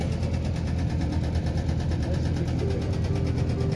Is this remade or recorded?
recorded